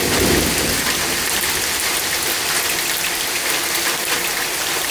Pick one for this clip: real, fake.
real